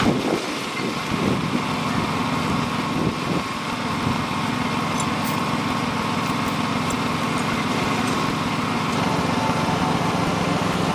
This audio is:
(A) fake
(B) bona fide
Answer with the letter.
B